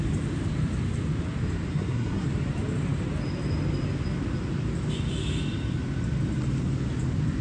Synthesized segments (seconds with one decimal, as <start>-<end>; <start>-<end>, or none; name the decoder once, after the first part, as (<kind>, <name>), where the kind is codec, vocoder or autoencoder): 1.7-2.3 (codec, SNAC)